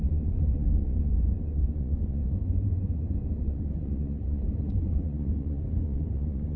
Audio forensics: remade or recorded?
remade